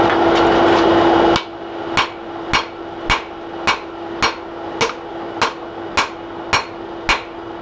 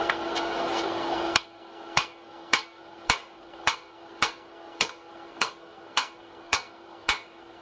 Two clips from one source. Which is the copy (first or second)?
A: second